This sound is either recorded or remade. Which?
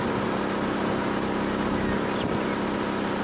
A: recorded